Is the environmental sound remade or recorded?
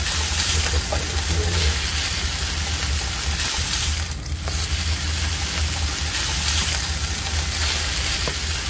recorded